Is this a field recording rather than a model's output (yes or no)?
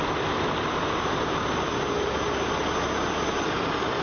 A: yes